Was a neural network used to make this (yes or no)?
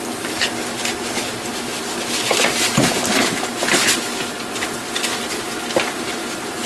no